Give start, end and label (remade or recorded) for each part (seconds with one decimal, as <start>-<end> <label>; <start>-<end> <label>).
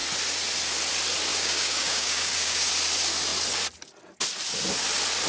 0.0-1.3 recorded; 1.3-2.7 remade; 2.7-5.3 recorded